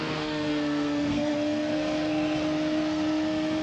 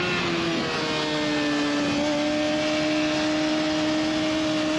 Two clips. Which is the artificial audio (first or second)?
first